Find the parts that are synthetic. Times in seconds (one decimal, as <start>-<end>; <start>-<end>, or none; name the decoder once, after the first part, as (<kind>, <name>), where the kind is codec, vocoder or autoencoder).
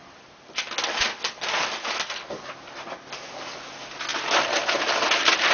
none